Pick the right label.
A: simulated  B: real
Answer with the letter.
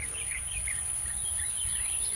A